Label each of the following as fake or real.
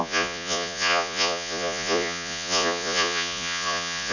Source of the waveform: fake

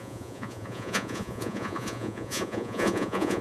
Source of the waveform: fake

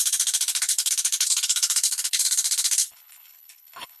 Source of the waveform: fake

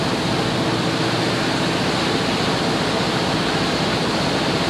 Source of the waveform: real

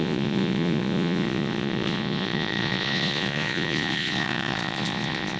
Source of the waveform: fake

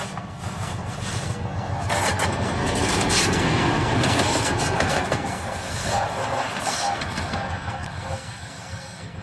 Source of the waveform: fake